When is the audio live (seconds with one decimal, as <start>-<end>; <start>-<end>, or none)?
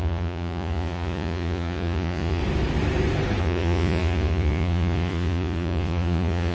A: 2.4-3.4